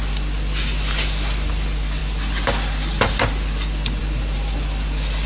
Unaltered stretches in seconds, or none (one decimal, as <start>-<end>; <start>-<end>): 0.0-5.3